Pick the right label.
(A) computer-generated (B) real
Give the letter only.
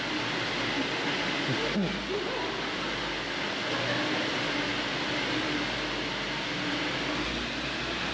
B